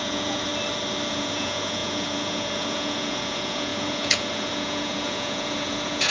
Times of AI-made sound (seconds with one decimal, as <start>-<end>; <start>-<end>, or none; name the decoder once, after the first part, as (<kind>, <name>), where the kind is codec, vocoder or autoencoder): 0.0-0.5 (vocoder, Vocos); 1.1-6.1